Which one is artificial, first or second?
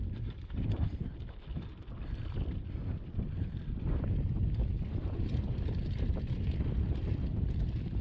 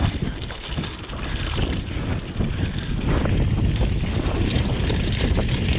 first